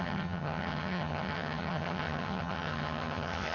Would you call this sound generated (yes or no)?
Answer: yes